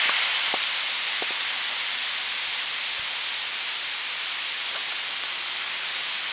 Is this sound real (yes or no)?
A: yes